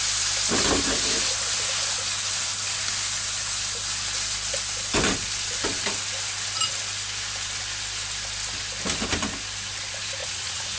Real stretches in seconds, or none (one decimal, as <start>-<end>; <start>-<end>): 0.0-10.2

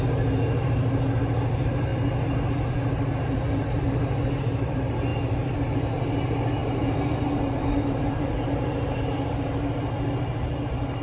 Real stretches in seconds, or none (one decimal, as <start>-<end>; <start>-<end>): 1.9-2.7

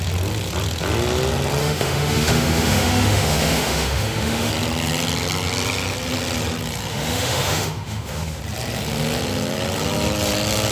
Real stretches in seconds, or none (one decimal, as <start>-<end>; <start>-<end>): 0.0-1.6; 4.5-6.9; 8.4-10.7

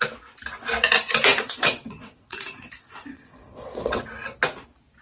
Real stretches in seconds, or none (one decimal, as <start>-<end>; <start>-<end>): 0.0-1.3; 4.0-5.0

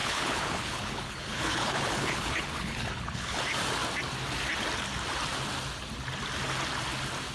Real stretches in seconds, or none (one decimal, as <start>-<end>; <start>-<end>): 3.4-7.3